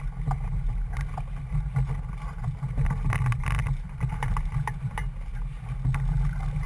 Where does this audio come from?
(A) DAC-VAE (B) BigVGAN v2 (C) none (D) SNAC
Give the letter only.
C